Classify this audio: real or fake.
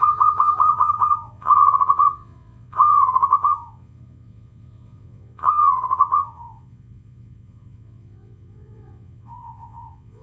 fake